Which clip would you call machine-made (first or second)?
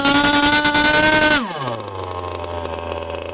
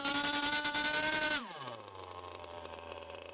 second